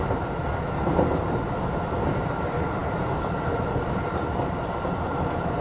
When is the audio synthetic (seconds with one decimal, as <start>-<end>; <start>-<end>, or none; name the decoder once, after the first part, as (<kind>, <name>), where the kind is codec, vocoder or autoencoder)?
none